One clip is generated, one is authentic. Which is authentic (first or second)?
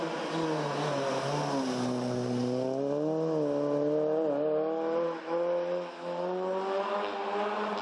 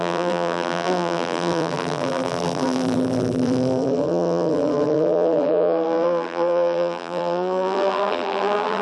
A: first